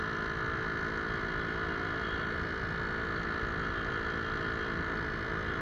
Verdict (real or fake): real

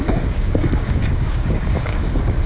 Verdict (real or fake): fake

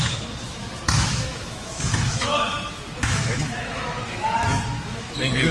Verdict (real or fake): fake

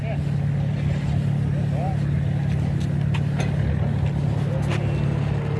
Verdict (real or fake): real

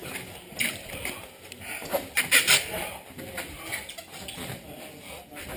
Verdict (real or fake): real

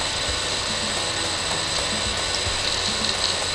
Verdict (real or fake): real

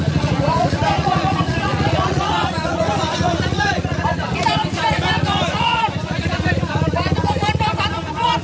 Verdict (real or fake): fake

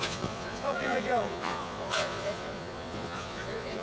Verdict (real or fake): fake